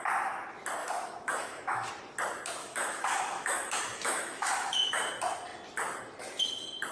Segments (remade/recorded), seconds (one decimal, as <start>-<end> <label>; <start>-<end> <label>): 0.0-0.8 recorded; 0.8-1.9 remade; 1.9-2.6 recorded; 2.6-5.1 remade; 5.1-6.9 recorded